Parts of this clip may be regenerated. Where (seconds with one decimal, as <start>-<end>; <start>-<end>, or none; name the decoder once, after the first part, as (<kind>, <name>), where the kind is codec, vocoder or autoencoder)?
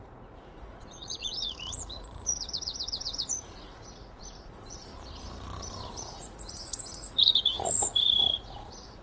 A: 0.0-4.9 (vocoder, Vocos); 5.9-9.0